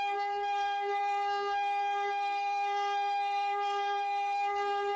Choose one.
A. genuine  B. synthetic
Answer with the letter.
B